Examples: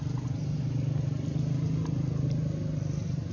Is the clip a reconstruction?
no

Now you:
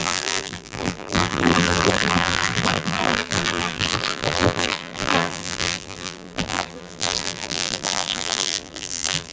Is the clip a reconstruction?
yes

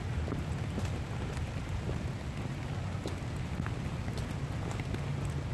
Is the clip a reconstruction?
no